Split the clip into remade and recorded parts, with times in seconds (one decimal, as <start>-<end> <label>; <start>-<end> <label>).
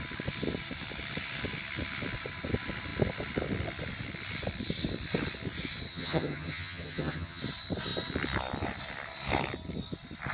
0.0-5.9 recorded; 5.9-7.4 remade; 7.4-10.3 recorded